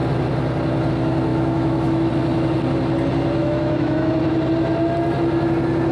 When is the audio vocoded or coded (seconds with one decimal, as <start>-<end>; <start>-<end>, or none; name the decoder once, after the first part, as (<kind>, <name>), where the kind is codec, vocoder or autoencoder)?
1.3-2.1 (autoencoder, DAC-VAE); 3.4-4.1